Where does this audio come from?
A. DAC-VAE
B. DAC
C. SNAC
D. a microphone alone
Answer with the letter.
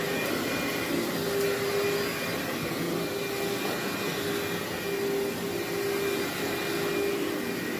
D